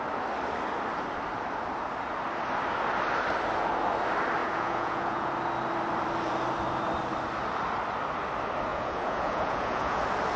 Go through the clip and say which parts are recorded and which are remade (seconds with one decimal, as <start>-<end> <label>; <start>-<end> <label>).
0.0-4.4 recorded; 4.4-5.3 remade; 5.3-8.7 recorded; 8.7-10.0 remade; 10.0-10.4 recorded